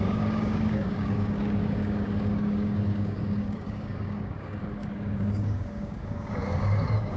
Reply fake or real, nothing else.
fake